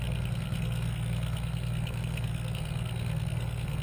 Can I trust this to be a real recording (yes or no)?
no